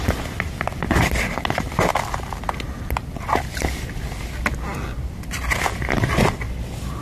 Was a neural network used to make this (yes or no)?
no